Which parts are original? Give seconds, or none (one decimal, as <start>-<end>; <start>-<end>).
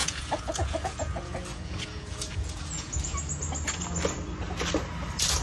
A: 3.2-5.4